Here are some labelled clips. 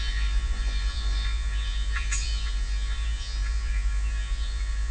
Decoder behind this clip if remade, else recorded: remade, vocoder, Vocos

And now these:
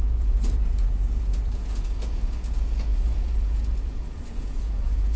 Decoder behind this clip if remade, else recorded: remade, vocoder, Vocos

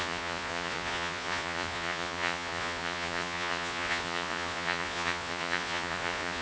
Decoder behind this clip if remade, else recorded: remade, vocoder, Vocos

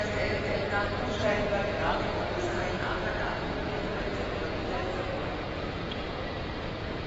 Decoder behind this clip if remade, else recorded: remade, vocoder, Vocos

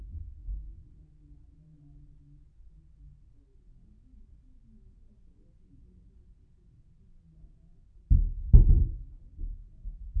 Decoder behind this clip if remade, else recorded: recorded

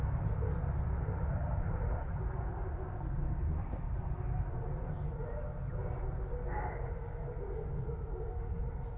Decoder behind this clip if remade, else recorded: recorded